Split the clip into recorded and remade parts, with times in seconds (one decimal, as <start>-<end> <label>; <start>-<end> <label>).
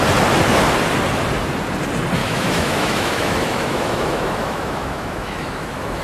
0.0-2.2 recorded; 2.2-6.0 remade